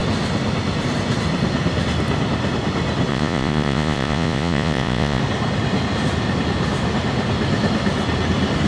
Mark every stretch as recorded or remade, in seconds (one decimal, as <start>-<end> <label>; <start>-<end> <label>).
0.0-3.1 recorded; 3.1-5.2 remade; 5.2-8.7 recorded